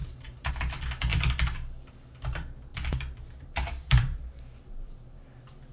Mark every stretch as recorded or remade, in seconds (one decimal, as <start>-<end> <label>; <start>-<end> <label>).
0.0-0.5 remade; 0.5-2.7 recorded; 2.7-5.2 remade; 5.2-5.7 recorded